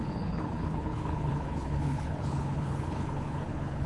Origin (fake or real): fake